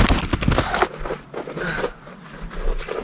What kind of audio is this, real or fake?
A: real